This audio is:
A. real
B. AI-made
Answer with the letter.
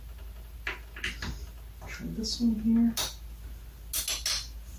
A